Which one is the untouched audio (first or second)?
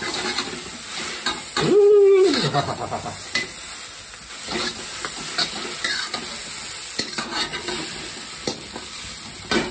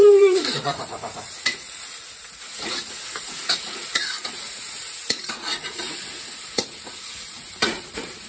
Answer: first